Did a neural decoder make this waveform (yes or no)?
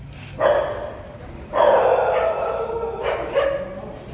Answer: no